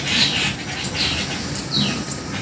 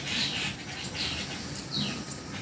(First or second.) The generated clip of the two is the second